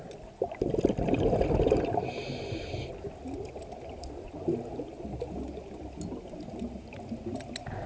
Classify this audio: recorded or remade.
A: recorded